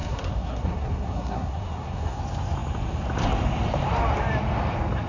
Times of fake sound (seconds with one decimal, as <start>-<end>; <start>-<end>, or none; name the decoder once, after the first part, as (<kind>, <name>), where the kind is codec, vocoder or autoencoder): 0.0-2.2 (codec, SNAC)